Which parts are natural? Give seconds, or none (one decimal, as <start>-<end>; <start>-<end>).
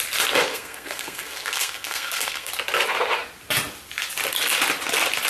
0.0-0.5; 2.5-5.3